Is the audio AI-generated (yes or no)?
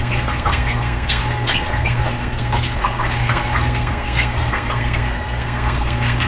yes